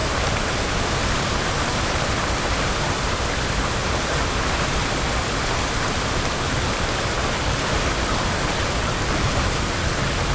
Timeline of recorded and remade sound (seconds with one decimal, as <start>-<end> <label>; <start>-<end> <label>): 0.0-2.6 remade; 2.6-3.8 recorded; 3.8-7.9 remade; 7.9-10.3 recorded

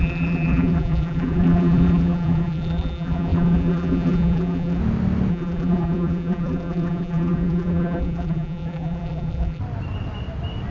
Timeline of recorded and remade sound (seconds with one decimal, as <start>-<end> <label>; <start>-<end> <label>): 0.0-4.8 remade; 4.8-5.3 recorded; 5.3-9.6 remade; 9.6-10.7 recorded